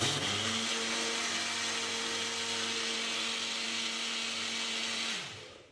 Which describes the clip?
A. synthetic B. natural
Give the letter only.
B